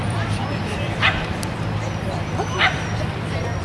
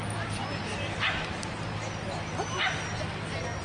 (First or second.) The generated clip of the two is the first